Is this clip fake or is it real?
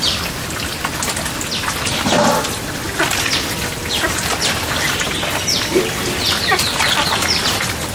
fake